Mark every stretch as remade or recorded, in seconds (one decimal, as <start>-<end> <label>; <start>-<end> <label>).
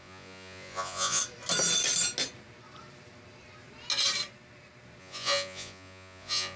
0.0-1.2 remade; 1.2-5.0 recorded; 5.0-6.6 remade